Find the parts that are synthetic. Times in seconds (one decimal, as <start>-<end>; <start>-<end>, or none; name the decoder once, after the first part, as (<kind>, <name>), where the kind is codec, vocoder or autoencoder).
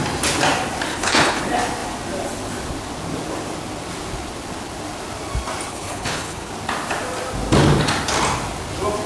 0.9-1.4 (codec, HILCodec); 5.7-6.5